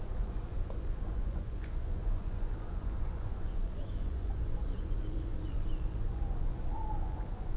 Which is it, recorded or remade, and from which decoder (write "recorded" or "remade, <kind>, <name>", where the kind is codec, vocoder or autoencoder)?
remade, vocoder, Vocos